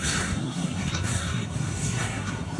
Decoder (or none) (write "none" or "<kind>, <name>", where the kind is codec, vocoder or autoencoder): codec, SNAC